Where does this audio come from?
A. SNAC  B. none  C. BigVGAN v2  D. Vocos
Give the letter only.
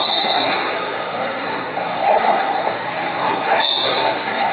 A